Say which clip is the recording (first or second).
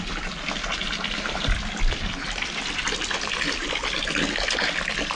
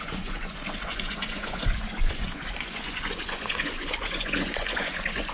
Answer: first